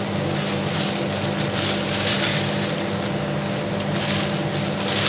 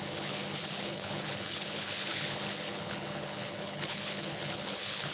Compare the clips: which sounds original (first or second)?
first